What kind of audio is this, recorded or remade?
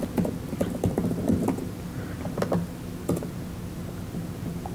recorded